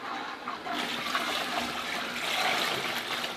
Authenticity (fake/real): real